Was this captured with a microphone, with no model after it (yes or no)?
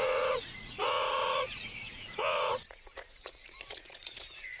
no